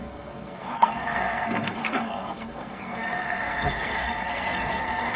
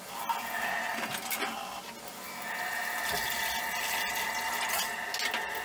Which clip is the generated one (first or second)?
first